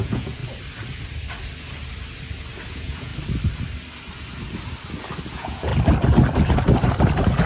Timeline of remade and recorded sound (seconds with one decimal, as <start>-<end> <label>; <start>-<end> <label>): 0.0-0.4 remade; 0.4-2.7 recorded; 2.7-3.1 remade; 3.1-5.3 recorded; 5.3-5.7 remade; 5.7-7.5 recorded